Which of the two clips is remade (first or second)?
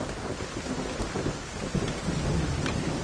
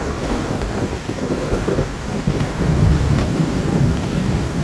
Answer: second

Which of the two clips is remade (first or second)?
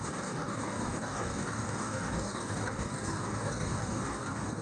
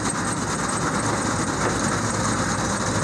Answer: first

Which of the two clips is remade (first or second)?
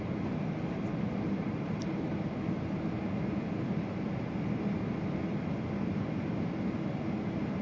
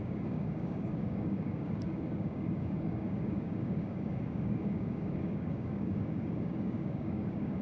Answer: second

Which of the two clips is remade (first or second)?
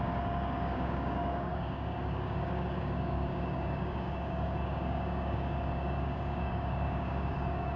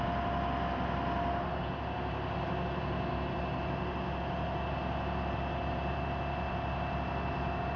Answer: first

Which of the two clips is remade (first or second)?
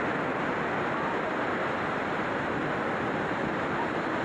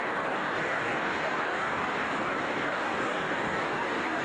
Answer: second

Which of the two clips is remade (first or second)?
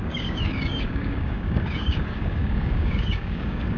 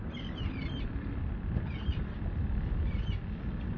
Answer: first